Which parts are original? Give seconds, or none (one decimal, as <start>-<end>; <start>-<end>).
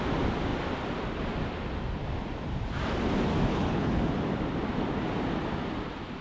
0.0-3.5; 4.0-6.2